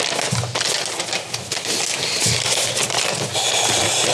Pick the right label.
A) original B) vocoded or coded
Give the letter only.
A